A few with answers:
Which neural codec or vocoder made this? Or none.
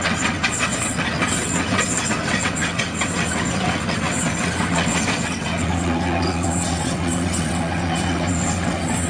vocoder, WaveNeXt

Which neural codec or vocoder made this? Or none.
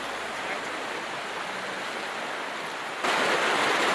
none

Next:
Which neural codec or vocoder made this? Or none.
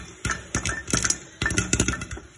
none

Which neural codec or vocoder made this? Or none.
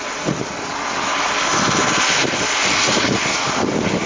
none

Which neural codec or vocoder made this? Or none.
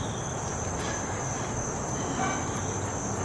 none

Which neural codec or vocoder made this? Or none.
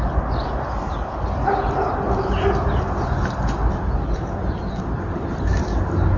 none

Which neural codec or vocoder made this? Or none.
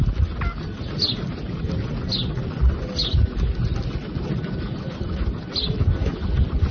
none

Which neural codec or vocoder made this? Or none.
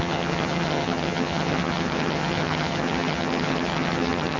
vocoder, HiFi-GAN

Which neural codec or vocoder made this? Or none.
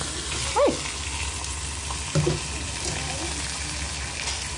none